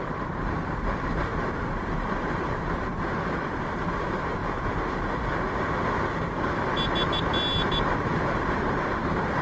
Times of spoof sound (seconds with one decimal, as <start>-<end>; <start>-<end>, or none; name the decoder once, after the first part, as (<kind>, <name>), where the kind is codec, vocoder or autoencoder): 0.0-4.4 (vocoder, BigVGAN v2); 7.7-9.4